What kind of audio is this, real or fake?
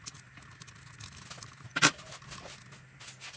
real